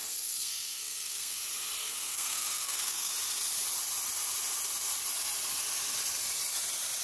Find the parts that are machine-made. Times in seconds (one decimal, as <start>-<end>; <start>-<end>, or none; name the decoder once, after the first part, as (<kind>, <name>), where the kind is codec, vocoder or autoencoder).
0.0-1.4 (codec, SNAC); 1.8-3.1